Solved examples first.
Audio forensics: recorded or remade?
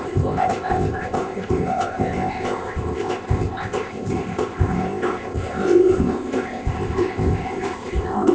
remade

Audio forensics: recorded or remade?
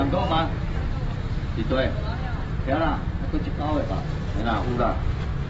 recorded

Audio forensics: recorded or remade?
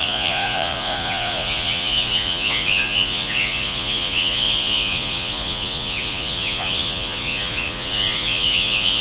remade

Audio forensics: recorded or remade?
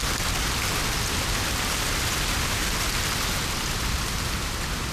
recorded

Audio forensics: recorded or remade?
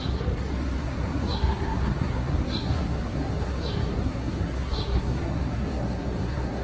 remade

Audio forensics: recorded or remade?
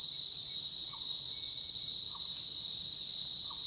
recorded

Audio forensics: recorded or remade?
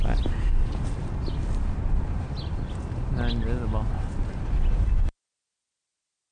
recorded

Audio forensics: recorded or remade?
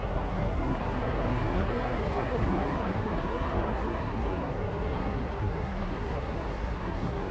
remade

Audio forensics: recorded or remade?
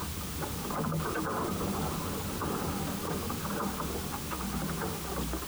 recorded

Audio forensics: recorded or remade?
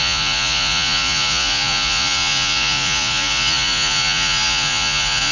remade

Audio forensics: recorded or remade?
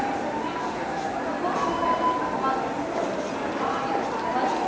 recorded